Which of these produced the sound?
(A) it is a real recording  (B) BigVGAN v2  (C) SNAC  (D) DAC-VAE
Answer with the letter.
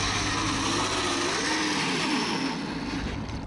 A